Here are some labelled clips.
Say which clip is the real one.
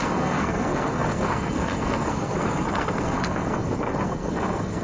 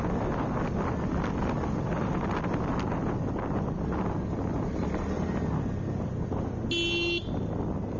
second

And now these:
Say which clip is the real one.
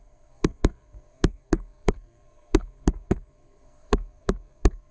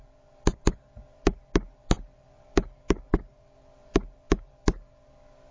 second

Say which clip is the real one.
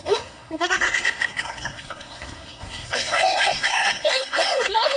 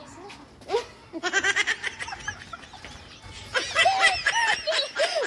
second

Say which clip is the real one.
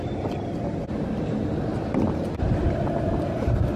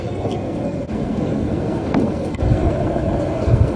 first